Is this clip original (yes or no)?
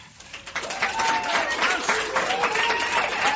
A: yes